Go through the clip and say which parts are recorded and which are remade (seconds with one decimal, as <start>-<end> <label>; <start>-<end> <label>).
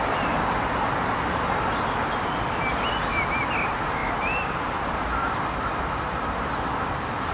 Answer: 0.0-7.3 recorded